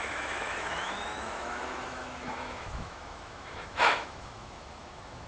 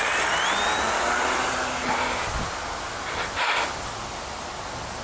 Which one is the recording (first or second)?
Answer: second